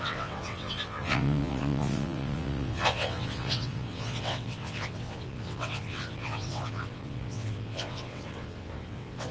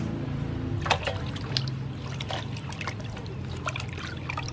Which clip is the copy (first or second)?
first